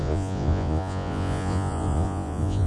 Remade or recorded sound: remade